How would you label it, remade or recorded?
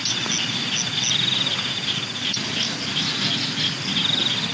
recorded